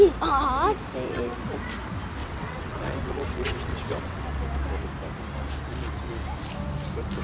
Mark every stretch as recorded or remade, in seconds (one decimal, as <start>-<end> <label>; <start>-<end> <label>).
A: 0.0-2.2 recorded; 2.2-4.4 remade; 4.4-7.2 recorded